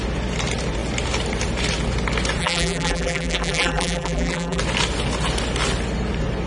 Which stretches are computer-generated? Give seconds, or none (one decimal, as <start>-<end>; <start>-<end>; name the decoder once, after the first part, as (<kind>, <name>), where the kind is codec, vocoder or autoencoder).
2.4-4.6 (vocoder, BigVGAN v2)